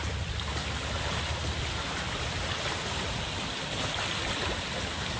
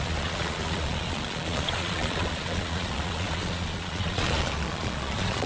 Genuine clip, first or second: first